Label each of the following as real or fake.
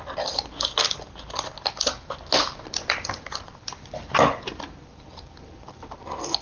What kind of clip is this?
real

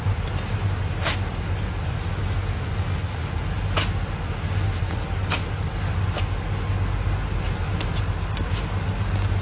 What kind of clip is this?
real